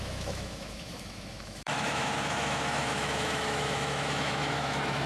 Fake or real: fake